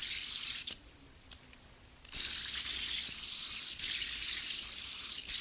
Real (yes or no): yes